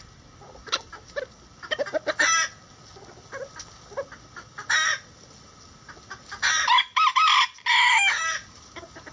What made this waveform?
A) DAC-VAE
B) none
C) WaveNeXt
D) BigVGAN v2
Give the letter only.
B